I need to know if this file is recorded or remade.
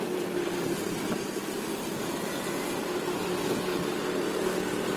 recorded